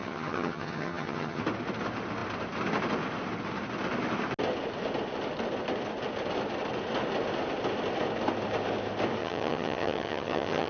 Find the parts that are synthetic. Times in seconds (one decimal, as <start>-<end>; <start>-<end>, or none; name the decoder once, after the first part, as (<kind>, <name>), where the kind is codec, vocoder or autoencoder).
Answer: 0.0-1.4 (vocoder, HiFi-GAN); 9.2-10.7